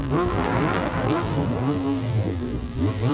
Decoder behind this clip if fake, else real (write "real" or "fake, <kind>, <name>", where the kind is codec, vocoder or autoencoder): fake, vocoder, BigVGAN v2